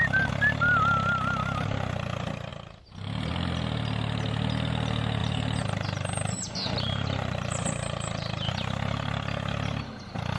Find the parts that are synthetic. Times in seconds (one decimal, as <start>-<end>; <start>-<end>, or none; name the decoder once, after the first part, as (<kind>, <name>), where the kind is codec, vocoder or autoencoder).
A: 2.5-3.3 (vocoder, BigVGAN v2); 5.2-8.5